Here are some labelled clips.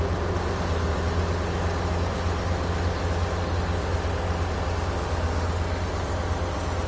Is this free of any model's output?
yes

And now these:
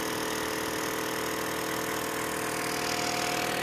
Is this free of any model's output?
yes